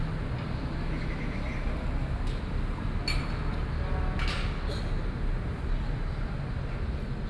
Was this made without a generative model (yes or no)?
yes